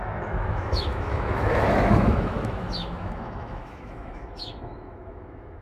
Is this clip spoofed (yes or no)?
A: yes